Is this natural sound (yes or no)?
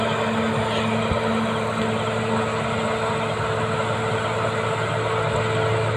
yes